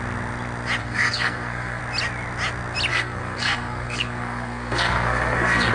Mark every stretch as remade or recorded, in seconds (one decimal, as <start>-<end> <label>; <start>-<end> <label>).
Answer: 0.0-0.8 recorded; 0.8-1.8 remade; 1.8-2.9 recorded; 2.9-5.7 remade